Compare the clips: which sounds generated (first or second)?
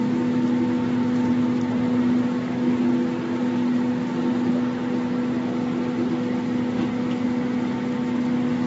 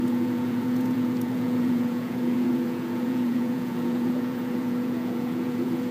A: second